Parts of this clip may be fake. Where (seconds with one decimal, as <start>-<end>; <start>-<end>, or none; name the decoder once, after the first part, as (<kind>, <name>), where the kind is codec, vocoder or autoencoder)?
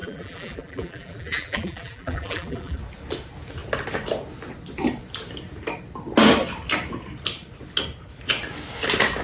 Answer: 0.0-2.8 (vocoder, BigVGAN v2)